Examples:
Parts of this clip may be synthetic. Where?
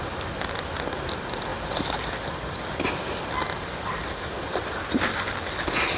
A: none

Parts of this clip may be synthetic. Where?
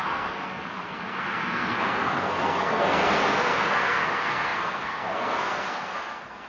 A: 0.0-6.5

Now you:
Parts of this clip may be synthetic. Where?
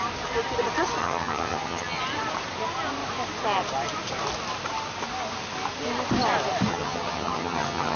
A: 1.0-2.0; 6.7-8.0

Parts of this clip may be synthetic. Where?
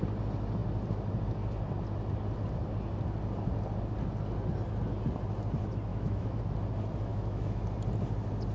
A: 5.9-6.4; 7.1-7.6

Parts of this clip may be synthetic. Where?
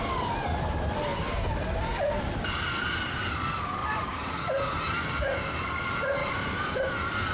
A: 3.8-4.8; 6.2-6.8